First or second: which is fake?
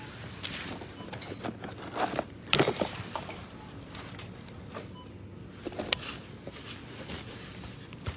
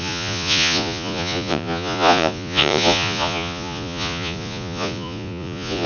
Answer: second